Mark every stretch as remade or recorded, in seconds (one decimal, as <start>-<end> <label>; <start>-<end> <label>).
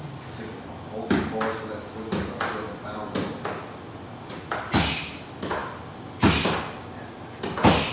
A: 0.0-7.9 recorded